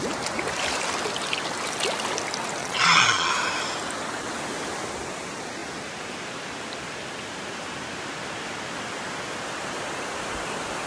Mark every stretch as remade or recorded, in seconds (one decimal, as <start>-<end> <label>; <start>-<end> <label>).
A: 0.0-2.6 recorded; 2.6-3.3 remade; 3.3-10.9 recorded